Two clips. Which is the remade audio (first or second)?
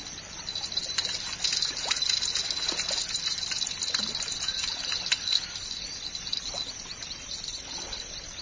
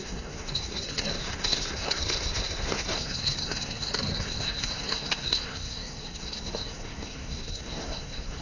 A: second